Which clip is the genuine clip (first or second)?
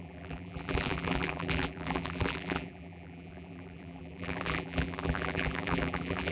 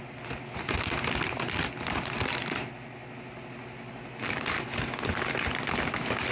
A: second